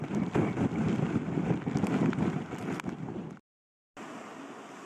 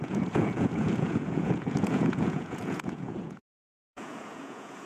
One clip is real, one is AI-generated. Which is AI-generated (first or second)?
second